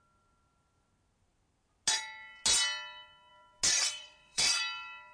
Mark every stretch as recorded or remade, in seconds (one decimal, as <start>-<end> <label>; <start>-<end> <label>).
0.0-3.7 recorded; 3.7-4.6 remade; 4.6-5.1 recorded